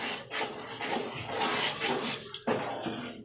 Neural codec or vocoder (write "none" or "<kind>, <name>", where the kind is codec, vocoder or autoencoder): none